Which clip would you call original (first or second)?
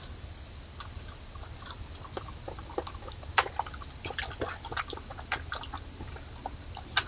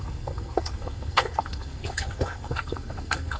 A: first